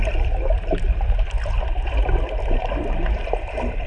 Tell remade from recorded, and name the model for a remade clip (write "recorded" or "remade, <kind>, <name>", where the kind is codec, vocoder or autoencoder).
recorded